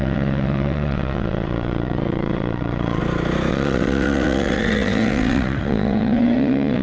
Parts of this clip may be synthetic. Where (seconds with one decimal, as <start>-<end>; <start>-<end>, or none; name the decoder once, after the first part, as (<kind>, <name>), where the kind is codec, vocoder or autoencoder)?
0.0-3.0 (vocoder, WaveNeXt); 3.5-6.8